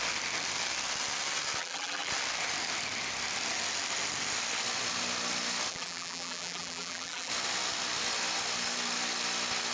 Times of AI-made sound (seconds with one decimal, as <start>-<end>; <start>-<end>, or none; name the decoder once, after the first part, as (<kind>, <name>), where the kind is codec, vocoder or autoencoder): 1.6-2.1 (vocoder, BigVGAN v2); 5.7-7.3